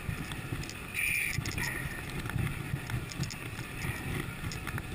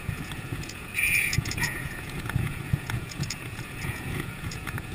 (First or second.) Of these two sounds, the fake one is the second